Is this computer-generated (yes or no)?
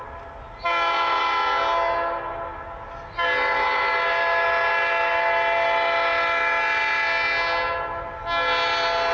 no